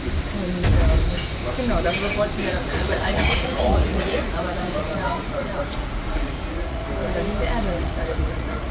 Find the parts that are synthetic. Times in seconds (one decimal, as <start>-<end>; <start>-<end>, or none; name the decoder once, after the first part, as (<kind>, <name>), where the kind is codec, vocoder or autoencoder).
2.5-6.8 (vocoder, Vocos); 7.8-8.7